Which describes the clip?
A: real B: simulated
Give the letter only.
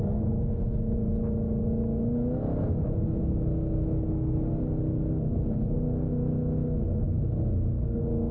A